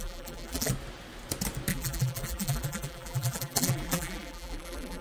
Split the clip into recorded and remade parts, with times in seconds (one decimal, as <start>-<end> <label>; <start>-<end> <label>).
0.0-0.7 remade; 0.7-1.7 recorded; 1.7-5.0 remade